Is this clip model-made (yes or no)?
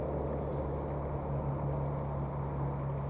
no